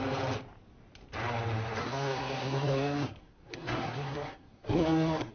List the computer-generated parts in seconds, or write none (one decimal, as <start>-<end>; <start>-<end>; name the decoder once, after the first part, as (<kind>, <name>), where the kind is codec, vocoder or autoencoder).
1.8-5.3 (codec, SNAC)